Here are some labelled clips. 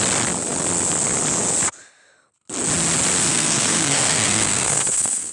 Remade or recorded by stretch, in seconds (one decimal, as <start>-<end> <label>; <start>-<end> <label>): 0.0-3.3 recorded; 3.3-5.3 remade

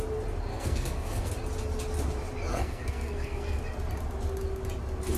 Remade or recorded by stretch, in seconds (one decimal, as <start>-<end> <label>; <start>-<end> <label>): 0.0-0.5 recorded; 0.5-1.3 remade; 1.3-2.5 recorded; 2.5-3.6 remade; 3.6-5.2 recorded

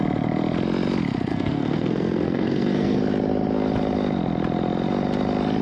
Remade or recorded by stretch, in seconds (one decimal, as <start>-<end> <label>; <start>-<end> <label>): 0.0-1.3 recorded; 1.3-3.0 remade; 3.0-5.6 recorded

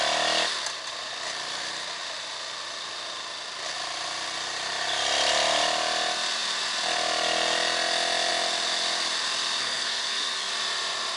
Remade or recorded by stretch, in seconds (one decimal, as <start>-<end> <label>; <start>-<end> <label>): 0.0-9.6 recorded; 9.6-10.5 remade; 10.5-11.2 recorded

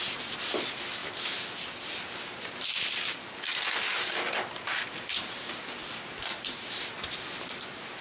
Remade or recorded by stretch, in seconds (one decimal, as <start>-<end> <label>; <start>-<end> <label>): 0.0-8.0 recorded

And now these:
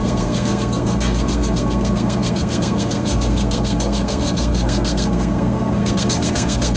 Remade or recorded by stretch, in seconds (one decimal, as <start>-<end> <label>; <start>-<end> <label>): 0.0-6.8 remade

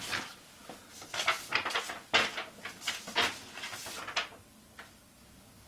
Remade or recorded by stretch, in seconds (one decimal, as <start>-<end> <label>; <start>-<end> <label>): 0.0-5.7 recorded